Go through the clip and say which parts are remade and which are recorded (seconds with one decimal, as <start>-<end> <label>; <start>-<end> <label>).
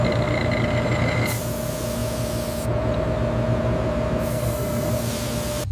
0.0-4.3 recorded; 4.3-4.9 remade; 4.9-5.7 recorded